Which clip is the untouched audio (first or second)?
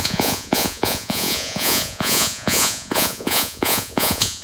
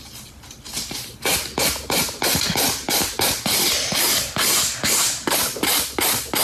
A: second